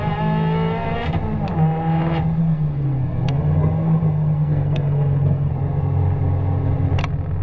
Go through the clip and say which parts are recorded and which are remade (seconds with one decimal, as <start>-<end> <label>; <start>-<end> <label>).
0.0-2.4 recorded; 2.4-5.5 remade; 5.5-7.4 recorded